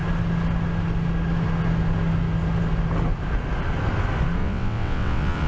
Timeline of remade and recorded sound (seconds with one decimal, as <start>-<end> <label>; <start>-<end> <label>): 0.0-4.4 recorded; 4.4-5.5 remade